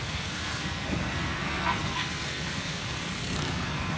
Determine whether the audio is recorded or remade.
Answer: remade